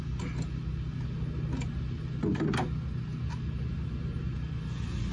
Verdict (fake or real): real